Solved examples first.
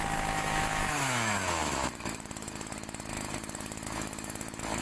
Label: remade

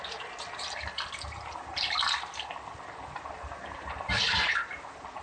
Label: recorded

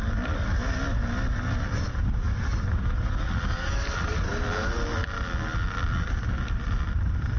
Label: recorded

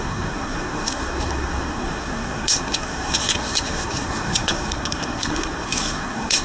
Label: remade